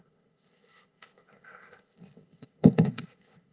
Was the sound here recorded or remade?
remade